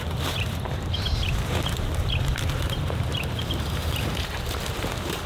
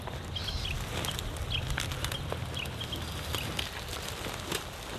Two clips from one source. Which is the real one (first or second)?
second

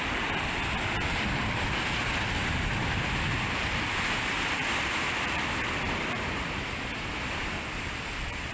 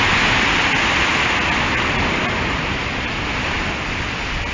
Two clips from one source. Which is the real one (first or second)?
second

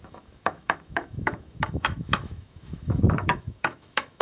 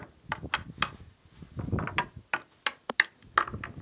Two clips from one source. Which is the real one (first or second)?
second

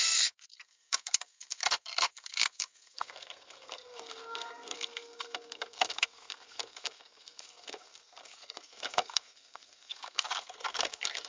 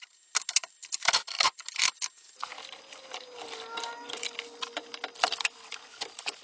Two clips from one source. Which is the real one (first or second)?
second